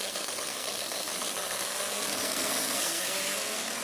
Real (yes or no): no